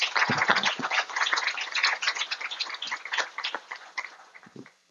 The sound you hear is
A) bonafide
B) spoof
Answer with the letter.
B